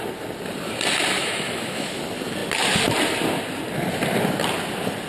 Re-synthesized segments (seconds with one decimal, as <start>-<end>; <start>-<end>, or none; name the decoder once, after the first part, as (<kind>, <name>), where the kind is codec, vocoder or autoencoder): 1.2-2.0 (autoencoder, DAC-VAE)